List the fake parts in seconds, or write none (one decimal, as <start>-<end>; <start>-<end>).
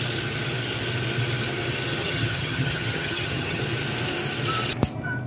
2.0-3.6